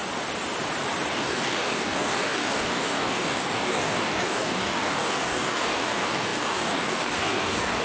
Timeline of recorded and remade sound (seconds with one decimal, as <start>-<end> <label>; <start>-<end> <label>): 0.0-1.1 recorded; 1.1-7.8 remade